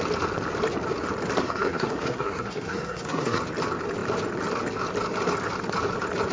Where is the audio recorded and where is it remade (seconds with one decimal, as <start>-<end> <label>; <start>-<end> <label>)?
0.0-1.4 recorded; 1.4-3.4 remade; 3.4-6.3 recorded